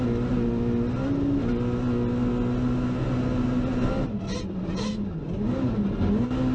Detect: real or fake real